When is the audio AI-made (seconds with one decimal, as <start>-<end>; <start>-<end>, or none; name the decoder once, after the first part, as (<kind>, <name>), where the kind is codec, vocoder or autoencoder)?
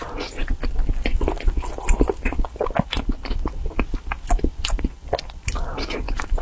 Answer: none